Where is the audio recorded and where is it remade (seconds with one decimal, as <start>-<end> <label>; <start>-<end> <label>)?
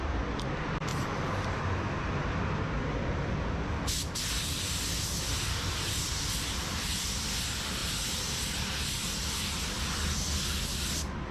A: 0.0-0.9 recorded; 0.9-1.6 remade; 1.6-5.3 recorded; 5.3-6.2 remade; 6.2-11.3 recorded